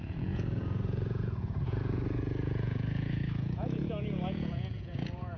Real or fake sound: fake